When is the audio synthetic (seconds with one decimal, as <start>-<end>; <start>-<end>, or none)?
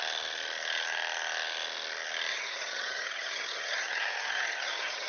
2.3-5.1